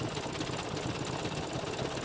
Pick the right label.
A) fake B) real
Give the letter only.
B